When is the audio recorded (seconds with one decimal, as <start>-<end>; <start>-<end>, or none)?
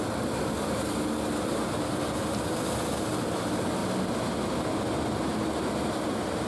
0.0-6.5